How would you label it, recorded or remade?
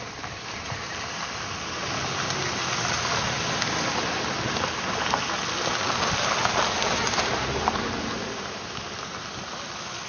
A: recorded